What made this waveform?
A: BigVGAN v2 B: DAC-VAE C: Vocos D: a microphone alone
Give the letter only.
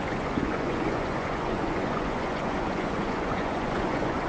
C